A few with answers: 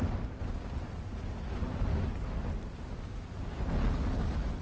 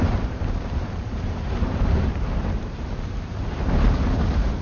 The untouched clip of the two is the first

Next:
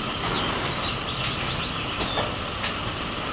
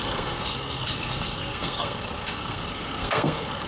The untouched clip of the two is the first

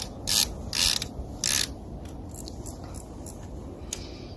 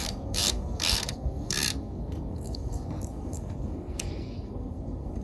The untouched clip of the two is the first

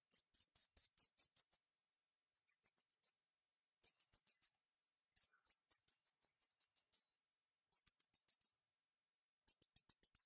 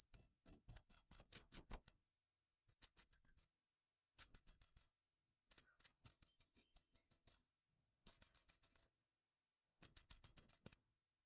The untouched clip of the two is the first